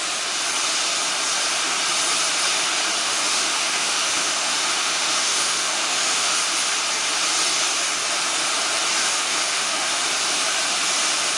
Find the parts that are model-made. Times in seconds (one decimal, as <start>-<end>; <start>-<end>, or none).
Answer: 3.0-6.4; 9.0-10.0